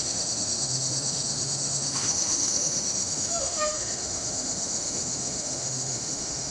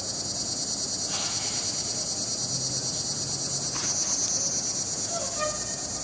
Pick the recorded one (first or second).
second